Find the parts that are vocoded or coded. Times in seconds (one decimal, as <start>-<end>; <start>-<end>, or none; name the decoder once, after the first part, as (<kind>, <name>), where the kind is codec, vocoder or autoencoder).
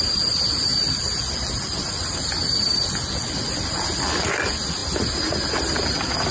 none